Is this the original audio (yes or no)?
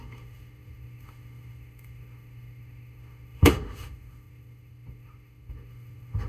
no